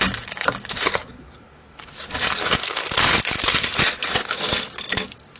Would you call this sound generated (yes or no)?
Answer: no